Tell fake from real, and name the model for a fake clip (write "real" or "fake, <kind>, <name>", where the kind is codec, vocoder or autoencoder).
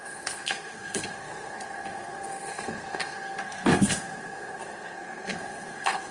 fake, codec, SNAC